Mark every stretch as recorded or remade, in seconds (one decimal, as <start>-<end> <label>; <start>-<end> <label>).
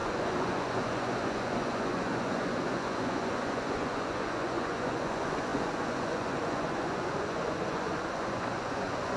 0.0-9.2 remade